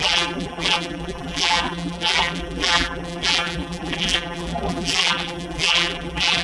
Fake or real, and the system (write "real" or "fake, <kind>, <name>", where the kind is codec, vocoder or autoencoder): fake, vocoder, BigVGAN v2